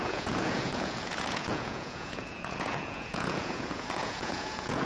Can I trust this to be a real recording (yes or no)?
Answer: no